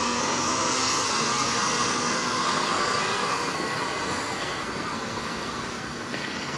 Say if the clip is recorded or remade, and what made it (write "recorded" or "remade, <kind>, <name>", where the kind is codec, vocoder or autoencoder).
remade, codec, SNAC